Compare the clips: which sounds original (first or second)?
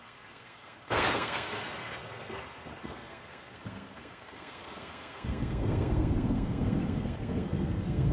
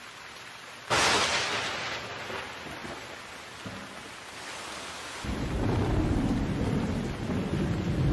second